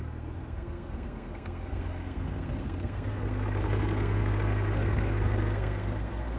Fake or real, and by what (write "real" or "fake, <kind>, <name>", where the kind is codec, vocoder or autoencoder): fake, codec, SNAC